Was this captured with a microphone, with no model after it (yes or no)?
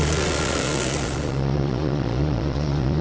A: no